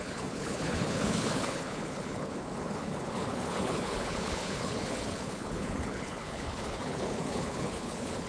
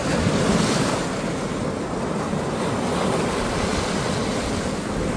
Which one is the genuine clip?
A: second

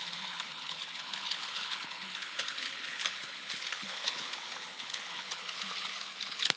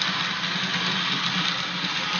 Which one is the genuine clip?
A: second